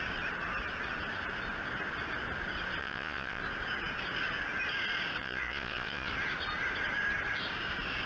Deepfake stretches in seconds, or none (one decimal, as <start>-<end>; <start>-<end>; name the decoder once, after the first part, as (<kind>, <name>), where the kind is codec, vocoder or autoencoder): 2.8-3.4 (vocoder, Vocos); 5.2-6.1